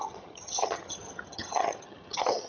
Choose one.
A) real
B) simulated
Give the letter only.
B